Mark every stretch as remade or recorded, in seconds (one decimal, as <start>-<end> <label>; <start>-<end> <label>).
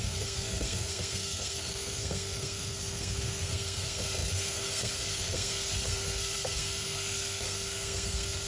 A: 0.0-8.5 remade